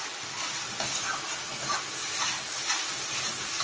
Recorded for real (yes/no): yes